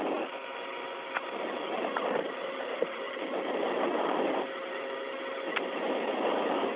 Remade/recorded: recorded